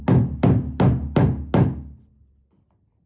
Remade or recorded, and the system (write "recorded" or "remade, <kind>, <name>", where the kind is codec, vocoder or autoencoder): recorded